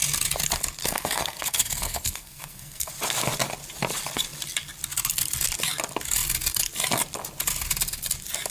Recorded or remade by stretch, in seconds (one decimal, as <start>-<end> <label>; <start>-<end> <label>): 0.0-0.8 recorded; 0.8-2.9 remade; 2.9-8.5 recorded